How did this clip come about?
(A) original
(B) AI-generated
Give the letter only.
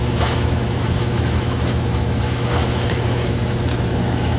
B